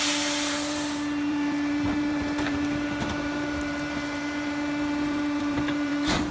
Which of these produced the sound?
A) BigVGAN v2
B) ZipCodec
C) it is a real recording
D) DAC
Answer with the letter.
A